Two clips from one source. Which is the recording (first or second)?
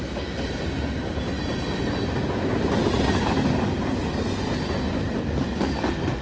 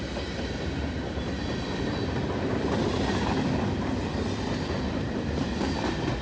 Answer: first